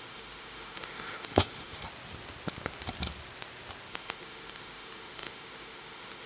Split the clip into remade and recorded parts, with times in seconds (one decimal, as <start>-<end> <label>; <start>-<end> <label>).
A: 0.0-1.8 remade; 1.8-3.9 recorded; 3.9-6.3 remade